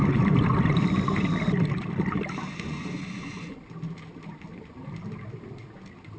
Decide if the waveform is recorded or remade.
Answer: recorded